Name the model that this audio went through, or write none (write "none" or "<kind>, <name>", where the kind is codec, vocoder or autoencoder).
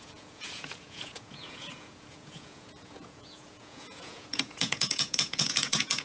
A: vocoder, Vocos